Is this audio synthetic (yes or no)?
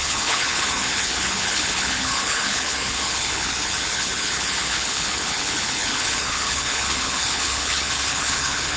yes